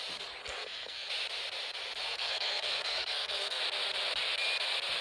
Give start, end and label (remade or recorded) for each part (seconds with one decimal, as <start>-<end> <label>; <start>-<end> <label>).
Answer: 0.0-0.4 recorded; 0.4-1.1 remade; 1.1-2.0 recorded; 2.0-3.6 remade; 3.6-5.0 recorded